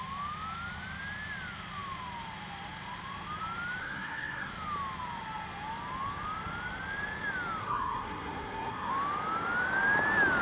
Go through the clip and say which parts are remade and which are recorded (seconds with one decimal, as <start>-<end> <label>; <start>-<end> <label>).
0.0-3.8 recorded; 3.8-4.5 remade; 4.5-7.6 recorded; 7.6-8.9 remade; 8.9-10.4 recorded